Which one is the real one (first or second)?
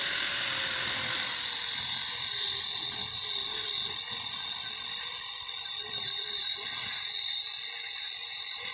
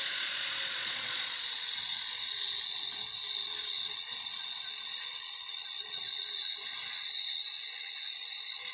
first